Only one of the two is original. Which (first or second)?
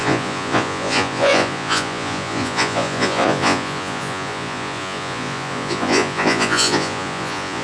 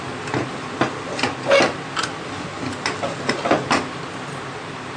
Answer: second